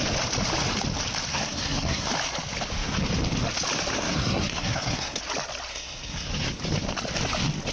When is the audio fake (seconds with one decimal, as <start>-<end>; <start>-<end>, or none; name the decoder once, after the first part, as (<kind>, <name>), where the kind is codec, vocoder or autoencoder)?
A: 1.3-2.1 (codec, SNAC); 3.9-5.2; 5.7-6.3